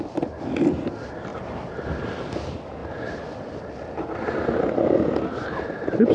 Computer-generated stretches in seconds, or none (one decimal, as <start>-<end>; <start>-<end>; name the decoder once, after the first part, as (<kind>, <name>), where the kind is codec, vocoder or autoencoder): none